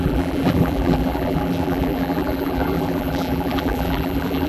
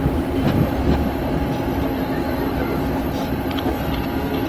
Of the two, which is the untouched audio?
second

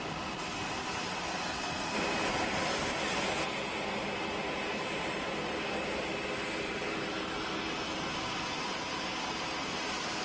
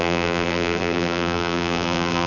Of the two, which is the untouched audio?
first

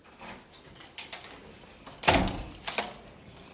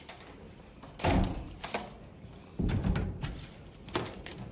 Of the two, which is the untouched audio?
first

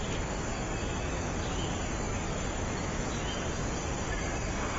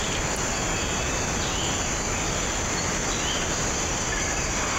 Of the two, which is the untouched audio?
second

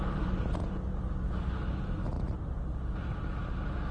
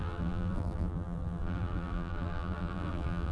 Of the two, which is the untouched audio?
first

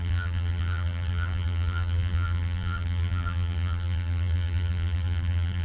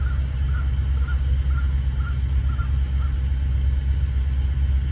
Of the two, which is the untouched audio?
second